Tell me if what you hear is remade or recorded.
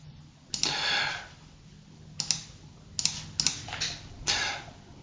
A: recorded